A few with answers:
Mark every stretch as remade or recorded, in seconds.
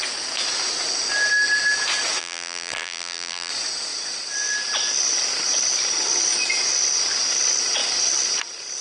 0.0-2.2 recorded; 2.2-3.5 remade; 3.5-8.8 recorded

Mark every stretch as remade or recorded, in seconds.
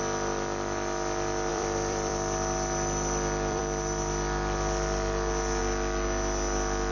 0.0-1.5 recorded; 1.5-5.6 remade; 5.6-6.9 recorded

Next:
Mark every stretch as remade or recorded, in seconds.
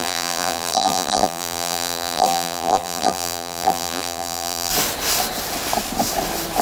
0.0-4.7 remade; 4.7-6.6 recorded